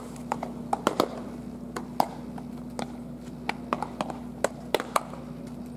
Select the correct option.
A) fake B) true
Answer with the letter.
B